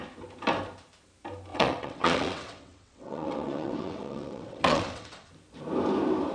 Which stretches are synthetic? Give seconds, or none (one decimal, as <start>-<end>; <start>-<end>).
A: 1.5-5.3